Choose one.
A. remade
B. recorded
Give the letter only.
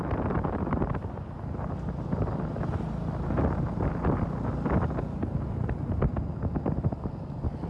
B